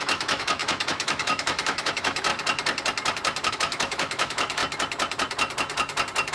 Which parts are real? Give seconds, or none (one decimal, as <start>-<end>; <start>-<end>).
2.3-3.5; 4.6-6.3